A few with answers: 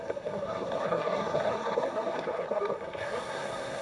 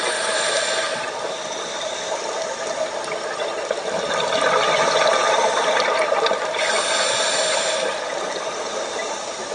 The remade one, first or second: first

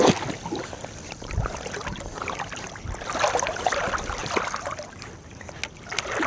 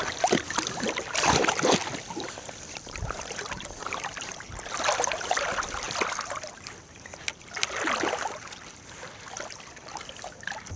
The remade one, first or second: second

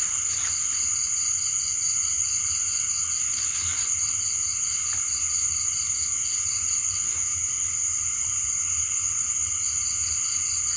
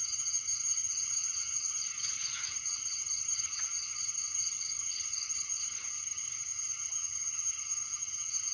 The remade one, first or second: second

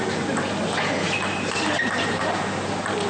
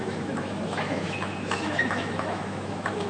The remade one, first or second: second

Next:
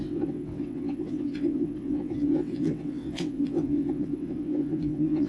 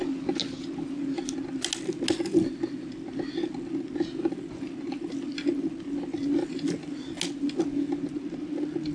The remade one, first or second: first